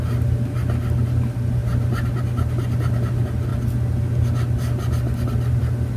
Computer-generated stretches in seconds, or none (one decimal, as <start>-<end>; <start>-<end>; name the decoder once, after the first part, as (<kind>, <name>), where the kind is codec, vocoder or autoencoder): none